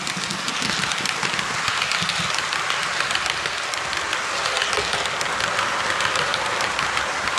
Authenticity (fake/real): real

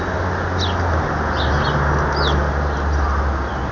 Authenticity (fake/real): real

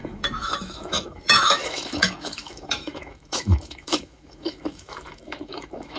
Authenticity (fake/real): fake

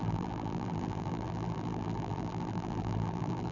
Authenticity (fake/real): fake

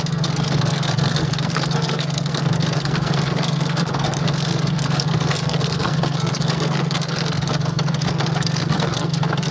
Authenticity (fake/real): fake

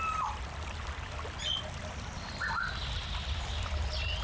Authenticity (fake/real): real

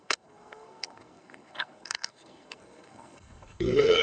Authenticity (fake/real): fake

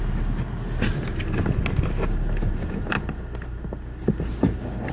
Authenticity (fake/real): real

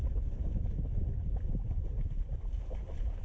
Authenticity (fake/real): real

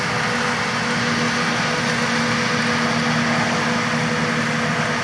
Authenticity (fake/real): real